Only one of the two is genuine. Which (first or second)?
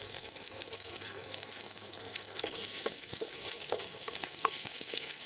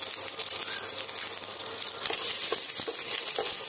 second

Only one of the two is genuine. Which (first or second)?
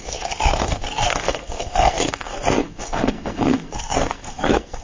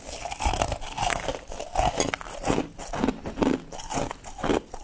second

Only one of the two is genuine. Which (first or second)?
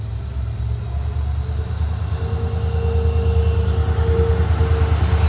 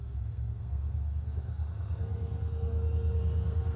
first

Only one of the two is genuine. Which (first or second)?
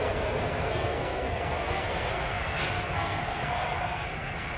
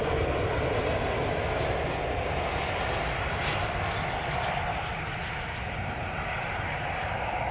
second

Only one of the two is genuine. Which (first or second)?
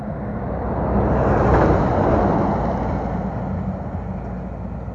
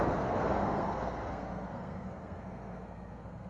first